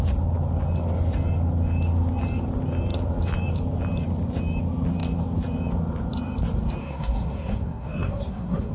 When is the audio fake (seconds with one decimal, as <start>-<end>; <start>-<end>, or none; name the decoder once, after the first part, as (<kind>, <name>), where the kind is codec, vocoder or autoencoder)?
6.8-8.7 (codec, SNAC)